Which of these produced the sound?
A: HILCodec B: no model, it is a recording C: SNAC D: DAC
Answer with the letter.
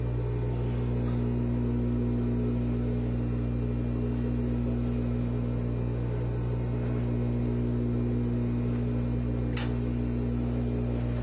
B